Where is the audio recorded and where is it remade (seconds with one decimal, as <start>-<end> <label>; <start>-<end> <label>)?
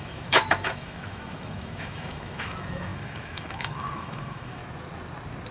0.0-4.6 remade; 4.6-5.5 recorded